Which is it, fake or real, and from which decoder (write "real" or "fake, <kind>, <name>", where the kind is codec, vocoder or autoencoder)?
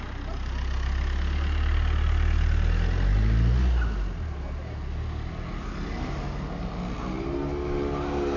real